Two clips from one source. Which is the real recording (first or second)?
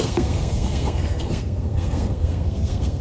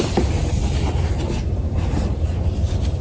second